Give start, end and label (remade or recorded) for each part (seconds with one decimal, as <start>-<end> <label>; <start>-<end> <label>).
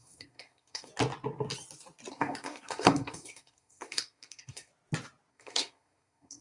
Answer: 0.0-0.9 remade; 0.9-2.1 recorded; 2.1-4.7 remade; 4.7-5.3 recorded; 5.3-6.4 remade